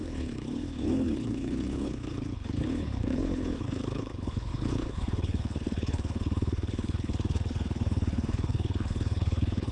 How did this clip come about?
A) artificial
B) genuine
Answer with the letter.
A